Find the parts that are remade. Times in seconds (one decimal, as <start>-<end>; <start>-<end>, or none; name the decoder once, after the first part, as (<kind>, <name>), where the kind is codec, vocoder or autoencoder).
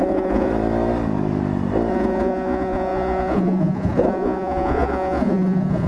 0.0-0.5 (vocoder, Vocos); 1.9-5.9